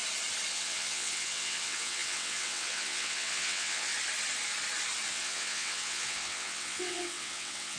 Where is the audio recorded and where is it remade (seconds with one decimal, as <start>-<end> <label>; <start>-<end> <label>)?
0.0-0.5 recorded; 0.5-3.9 remade; 3.9-5.1 recorded; 5.1-7.8 remade